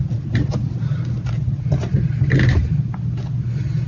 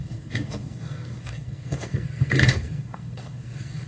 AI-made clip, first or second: second